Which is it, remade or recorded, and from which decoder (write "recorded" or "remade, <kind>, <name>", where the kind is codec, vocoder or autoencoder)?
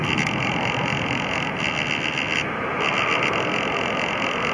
recorded